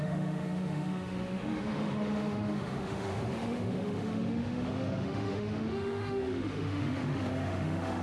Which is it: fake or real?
fake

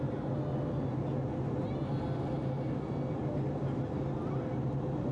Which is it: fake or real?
real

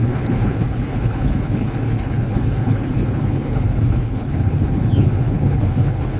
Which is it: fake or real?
fake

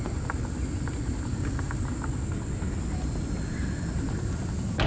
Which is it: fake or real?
real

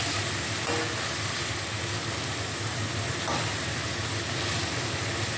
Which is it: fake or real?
real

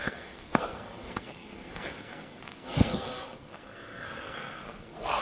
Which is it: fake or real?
fake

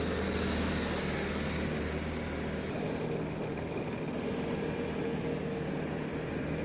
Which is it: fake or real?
real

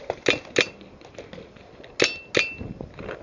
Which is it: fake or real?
real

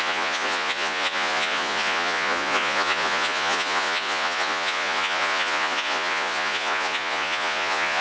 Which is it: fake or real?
fake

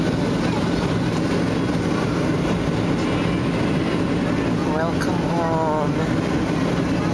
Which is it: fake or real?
real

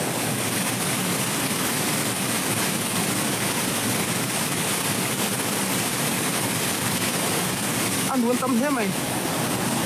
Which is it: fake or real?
fake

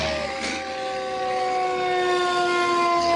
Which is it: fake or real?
real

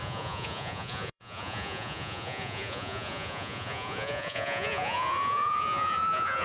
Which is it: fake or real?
fake